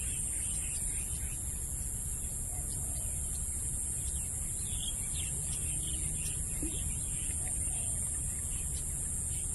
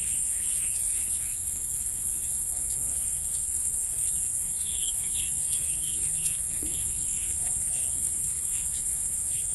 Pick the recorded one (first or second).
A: first